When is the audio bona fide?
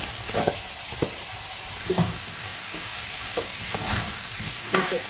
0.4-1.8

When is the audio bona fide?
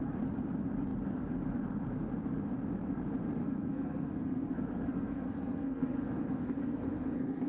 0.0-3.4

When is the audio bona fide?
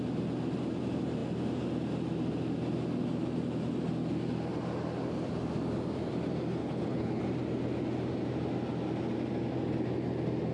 0.0-6.6; 7.2-10.5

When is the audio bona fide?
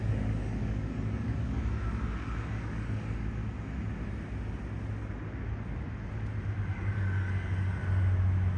3.4-6.7; 7.8-8.6